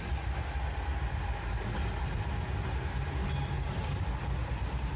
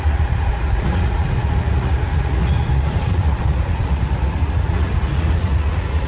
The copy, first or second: second